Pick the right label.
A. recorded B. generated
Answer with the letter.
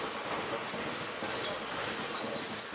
A